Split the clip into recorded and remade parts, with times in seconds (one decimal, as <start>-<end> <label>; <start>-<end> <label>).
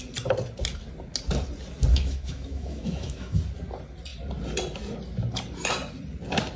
0.0-1.9 recorded; 1.9-3.4 remade; 3.4-6.6 recorded